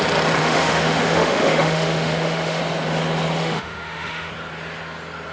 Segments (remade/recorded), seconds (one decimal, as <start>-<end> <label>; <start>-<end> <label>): 0.0-0.4 recorded; 0.4-2.6 remade; 2.6-3.4 recorded; 3.4-4.3 remade; 4.3-5.3 recorded